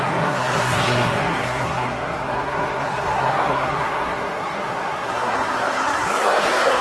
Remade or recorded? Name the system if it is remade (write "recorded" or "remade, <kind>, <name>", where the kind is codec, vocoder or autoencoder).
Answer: remade, codec, SNAC